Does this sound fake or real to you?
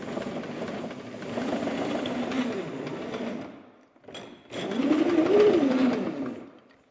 real